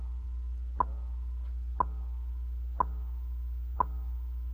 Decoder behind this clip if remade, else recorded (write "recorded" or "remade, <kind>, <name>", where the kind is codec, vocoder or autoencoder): recorded